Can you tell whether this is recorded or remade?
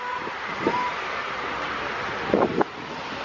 recorded